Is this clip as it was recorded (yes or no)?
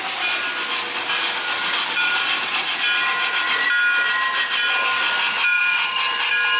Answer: yes